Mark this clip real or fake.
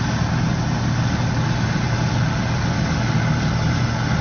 real